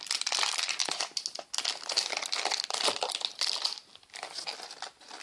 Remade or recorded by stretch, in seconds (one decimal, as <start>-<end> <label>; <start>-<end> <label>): 0.0-5.2 recorded